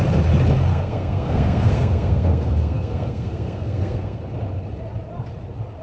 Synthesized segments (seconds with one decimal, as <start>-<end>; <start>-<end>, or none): 0.7-4.2